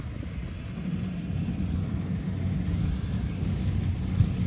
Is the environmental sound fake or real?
real